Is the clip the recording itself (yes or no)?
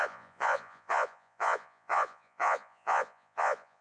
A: no